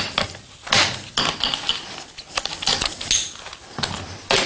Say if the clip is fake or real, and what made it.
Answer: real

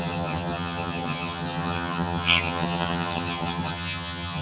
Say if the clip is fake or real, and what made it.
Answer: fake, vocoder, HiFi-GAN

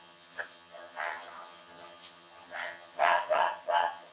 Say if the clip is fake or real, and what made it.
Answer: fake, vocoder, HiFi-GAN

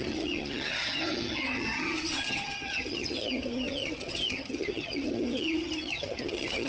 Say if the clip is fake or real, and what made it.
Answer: fake, vocoder, HiFi-GAN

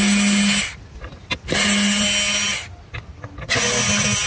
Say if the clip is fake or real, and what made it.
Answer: real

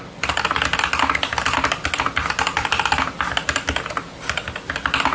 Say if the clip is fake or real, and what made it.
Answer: real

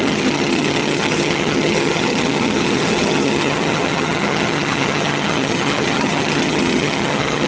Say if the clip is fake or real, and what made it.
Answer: fake, vocoder, HiFi-GAN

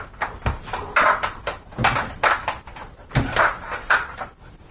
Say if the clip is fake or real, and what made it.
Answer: real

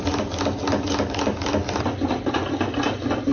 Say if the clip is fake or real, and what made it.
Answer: real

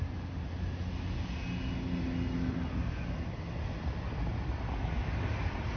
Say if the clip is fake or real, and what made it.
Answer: real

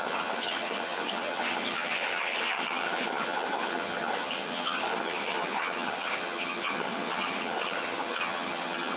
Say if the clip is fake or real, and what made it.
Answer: fake, vocoder, HiFi-GAN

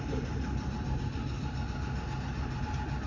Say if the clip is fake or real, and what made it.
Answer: real